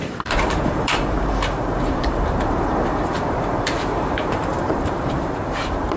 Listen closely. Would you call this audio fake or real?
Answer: fake